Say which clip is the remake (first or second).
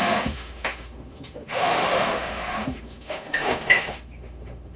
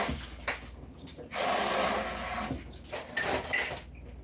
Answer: first